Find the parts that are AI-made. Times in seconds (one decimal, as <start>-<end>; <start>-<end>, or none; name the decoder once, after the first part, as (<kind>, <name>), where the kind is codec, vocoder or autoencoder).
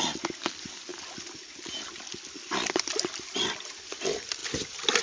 none